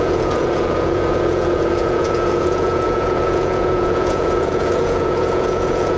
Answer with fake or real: fake